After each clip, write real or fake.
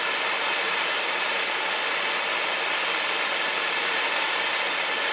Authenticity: real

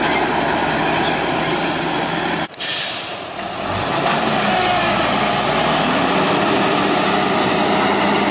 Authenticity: real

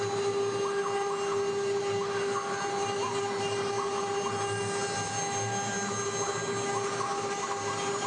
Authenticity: real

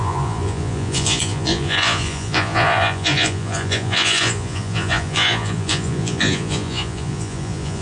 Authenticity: fake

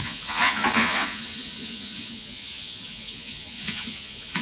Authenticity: fake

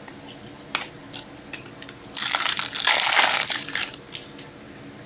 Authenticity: real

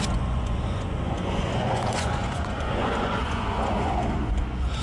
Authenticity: fake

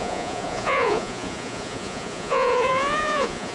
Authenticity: fake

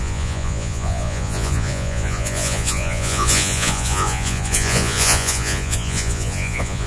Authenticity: fake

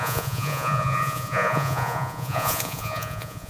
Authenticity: fake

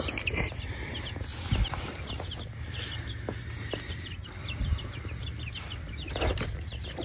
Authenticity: real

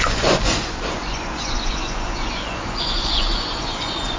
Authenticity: fake